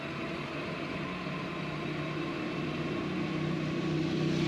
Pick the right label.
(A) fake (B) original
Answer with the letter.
B